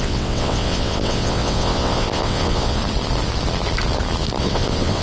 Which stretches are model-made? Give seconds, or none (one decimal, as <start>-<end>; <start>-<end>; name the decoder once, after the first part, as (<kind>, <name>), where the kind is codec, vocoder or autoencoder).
0.0-2.8 (vocoder, WaveNeXt); 4.4-5.0

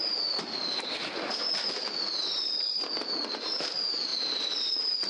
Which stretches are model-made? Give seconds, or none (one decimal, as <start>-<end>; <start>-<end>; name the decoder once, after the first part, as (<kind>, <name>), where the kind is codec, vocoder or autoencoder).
none

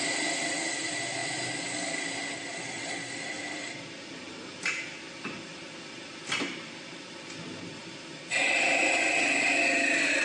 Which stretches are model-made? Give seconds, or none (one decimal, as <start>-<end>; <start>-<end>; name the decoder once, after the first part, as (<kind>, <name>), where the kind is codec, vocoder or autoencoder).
none

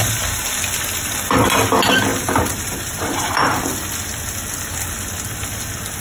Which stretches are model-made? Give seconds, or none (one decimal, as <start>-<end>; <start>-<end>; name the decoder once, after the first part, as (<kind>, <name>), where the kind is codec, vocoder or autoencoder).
2.1-3.3 (vocoder, BigVGAN v2)

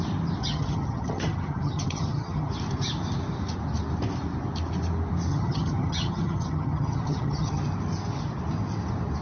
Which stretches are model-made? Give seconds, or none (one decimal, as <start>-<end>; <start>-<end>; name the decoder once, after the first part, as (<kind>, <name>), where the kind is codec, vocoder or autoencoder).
0.4-2.5 (vocoder, HiFi-GAN); 5.3-7.6